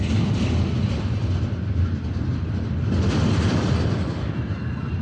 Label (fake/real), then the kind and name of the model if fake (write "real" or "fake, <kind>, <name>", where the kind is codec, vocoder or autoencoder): real